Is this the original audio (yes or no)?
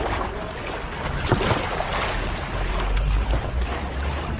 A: yes